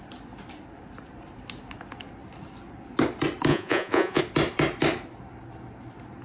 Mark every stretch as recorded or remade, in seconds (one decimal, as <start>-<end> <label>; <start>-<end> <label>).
0.0-3.5 recorded; 3.5-4.2 remade; 4.2-6.2 recorded